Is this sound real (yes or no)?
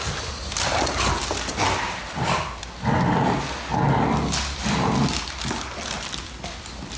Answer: yes